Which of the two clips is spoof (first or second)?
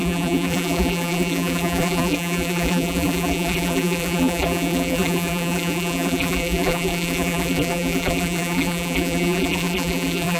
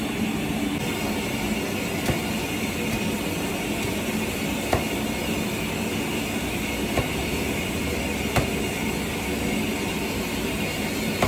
first